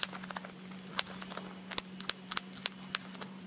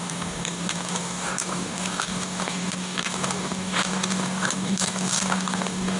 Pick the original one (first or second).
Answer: first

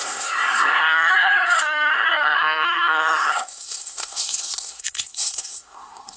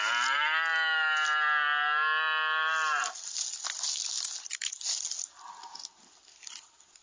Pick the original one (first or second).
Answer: second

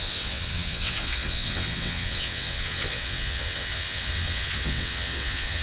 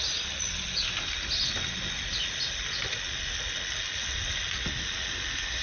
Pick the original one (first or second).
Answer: second